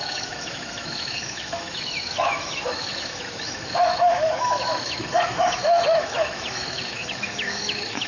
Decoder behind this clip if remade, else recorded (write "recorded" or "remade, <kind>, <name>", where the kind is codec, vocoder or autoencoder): remade, autoencoder, DAC-VAE